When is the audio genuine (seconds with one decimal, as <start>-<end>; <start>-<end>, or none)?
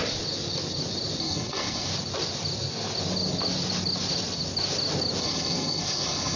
0.0-1.2; 1.9-5.2